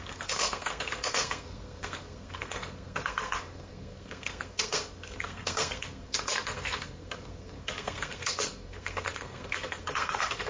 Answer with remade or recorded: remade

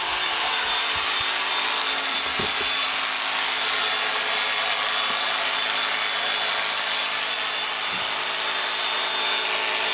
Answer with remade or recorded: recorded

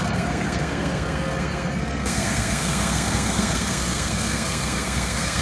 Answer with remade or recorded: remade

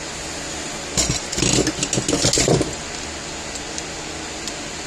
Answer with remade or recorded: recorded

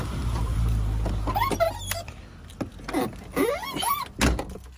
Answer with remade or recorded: recorded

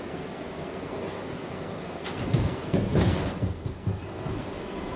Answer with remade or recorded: remade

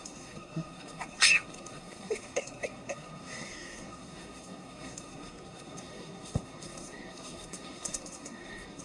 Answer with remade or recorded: remade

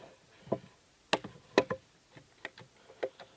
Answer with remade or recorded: recorded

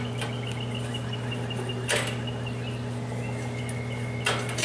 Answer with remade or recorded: recorded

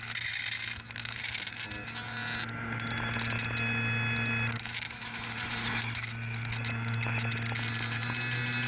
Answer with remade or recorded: recorded